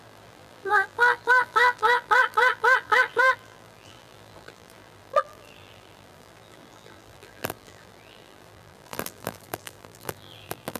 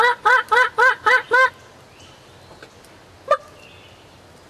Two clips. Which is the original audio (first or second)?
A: second